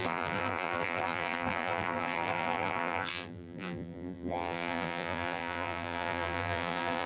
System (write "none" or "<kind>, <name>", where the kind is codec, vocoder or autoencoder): vocoder, BigVGAN v2